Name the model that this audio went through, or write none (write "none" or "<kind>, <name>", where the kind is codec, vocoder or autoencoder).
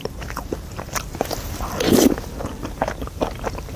none